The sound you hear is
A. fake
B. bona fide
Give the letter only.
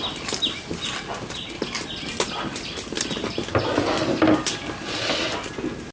B